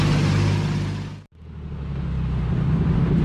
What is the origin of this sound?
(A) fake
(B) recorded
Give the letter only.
B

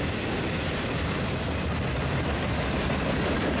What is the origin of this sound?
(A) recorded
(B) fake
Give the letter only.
A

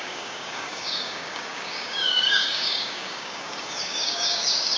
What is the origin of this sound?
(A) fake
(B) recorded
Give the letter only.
A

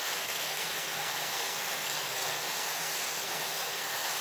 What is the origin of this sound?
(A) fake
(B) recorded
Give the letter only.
A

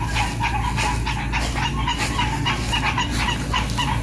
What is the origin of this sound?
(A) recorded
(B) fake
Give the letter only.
A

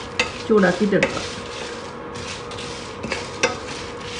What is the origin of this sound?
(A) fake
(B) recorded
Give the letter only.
B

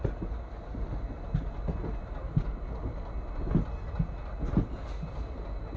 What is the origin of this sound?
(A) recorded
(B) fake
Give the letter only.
A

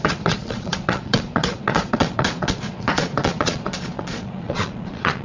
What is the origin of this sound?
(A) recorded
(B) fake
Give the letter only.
B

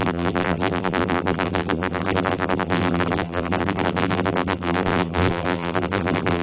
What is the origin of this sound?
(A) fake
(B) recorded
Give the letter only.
A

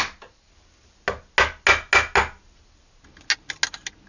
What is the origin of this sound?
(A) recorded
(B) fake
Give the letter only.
A